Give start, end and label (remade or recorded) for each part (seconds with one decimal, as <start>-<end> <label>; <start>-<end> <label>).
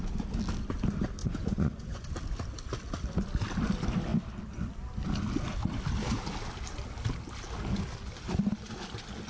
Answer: 0.0-1.2 recorded; 1.2-2.1 remade; 2.1-9.3 recorded